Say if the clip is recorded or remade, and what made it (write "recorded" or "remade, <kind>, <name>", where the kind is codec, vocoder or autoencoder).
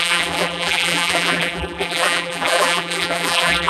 remade, vocoder, BigVGAN v2